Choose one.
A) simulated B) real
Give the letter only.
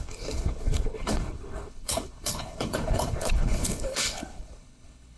A